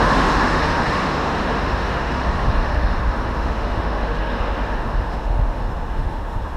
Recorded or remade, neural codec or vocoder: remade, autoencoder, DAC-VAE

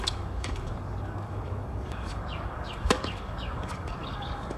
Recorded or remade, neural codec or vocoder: remade, codec, DAC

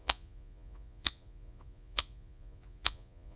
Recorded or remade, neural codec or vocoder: remade, vocoder, Vocos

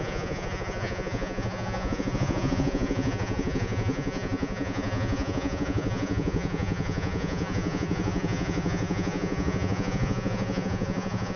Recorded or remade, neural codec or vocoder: remade, vocoder, Vocos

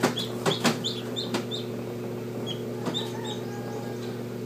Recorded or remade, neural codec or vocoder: recorded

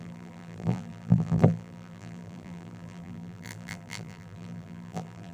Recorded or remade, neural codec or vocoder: remade, vocoder, BigVGAN v2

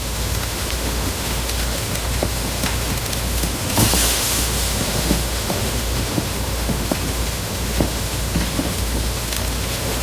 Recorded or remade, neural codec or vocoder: remade, autoencoder, DAC-VAE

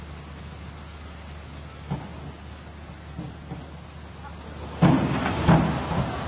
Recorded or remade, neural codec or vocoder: recorded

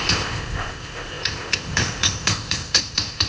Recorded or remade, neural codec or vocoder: remade, codec, ZipCodec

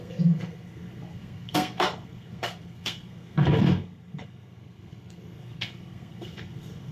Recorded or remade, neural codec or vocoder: remade, codec, SNAC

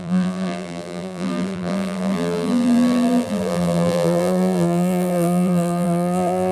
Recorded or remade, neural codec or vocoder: remade, vocoder, BigVGAN v2